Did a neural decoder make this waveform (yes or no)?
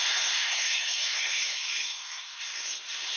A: yes